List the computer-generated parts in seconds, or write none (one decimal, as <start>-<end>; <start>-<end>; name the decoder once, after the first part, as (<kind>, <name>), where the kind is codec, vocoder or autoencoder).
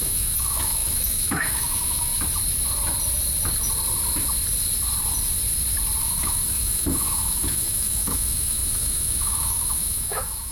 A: 0.0-2.1 (autoencoder, DAC-VAE); 6.0-10.5